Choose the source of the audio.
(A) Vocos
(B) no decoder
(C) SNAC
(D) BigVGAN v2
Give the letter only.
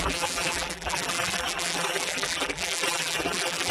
D